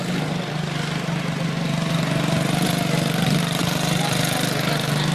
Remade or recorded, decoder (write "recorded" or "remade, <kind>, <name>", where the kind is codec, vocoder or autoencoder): recorded